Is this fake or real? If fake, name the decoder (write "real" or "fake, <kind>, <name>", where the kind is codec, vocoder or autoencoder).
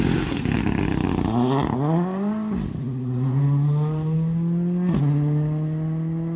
real